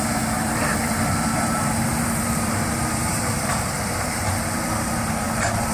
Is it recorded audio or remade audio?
remade